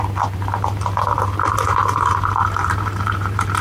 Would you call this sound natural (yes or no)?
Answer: no